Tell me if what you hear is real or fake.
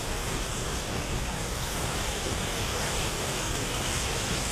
fake